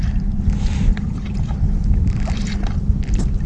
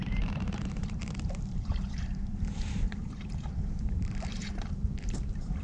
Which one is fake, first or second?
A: second